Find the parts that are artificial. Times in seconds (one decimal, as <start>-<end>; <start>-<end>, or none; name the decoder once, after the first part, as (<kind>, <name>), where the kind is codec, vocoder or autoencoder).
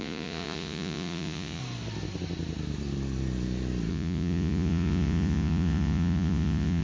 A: 0.0-1.6 (vocoder, Vocos); 3.9-6.8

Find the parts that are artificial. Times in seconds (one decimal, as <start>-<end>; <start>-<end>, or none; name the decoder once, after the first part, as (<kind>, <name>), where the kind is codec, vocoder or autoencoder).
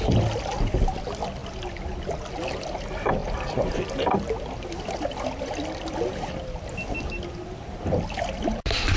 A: none